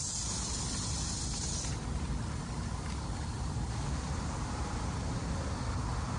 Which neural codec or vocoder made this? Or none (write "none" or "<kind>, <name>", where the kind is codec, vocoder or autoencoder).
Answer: none